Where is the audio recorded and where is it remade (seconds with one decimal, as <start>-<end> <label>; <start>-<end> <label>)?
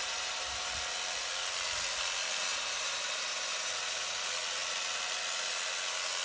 0.0-0.7 remade; 0.7-2.5 recorded; 2.5-3.7 remade; 3.7-6.2 recorded